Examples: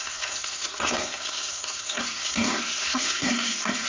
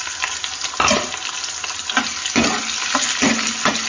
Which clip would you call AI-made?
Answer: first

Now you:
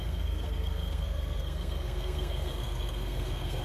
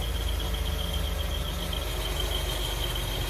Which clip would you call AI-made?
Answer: first